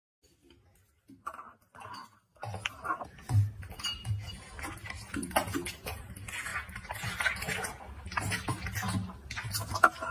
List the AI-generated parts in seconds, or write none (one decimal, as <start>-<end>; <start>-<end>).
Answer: none